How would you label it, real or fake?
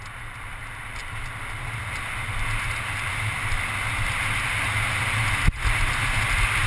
real